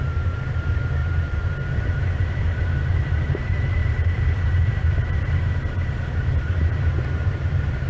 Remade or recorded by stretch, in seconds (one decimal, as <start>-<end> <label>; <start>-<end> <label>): 0.0-3.8 recorded; 3.8-5.2 remade; 5.2-7.9 recorded